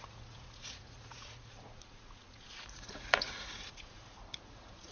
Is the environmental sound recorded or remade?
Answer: remade